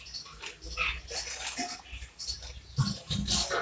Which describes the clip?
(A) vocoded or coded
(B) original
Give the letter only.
B